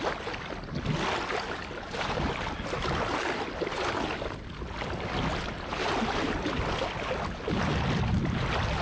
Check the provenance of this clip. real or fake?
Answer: real